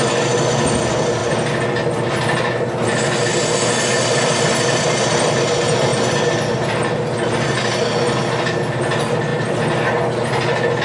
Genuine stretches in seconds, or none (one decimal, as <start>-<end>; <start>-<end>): 0.0-5.9; 6.9-10.8